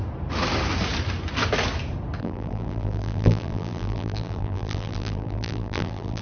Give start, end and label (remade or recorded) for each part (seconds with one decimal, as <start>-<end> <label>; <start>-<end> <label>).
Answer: 0.0-2.2 recorded; 2.2-6.2 remade